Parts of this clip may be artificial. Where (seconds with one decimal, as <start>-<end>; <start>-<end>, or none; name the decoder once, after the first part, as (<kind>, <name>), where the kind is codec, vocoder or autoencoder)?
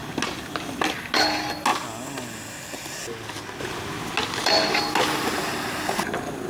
none